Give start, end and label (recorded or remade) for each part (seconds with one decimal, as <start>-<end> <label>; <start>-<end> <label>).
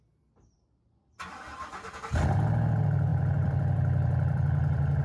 0.0-3.1 recorded; 3.1-5.0 remade